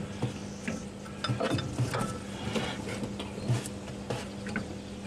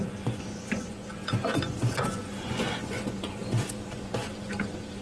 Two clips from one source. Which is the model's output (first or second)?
second